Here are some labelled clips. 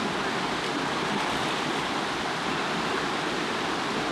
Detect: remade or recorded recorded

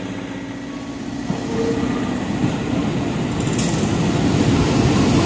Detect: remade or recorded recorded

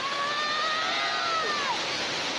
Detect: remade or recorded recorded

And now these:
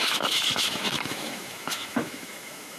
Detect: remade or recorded remade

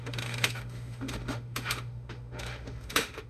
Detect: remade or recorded remade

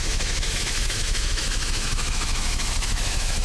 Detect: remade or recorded remade